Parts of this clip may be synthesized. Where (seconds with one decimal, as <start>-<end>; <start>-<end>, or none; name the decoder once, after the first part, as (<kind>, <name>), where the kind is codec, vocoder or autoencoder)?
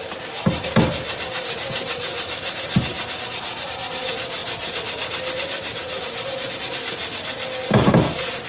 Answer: none